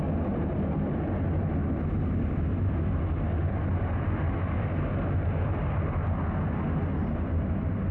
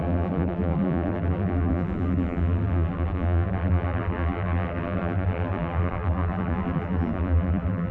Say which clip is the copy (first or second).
second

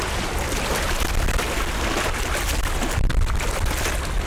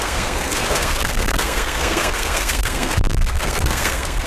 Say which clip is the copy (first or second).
second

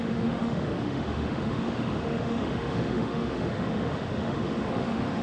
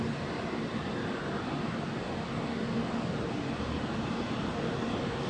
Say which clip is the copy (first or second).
first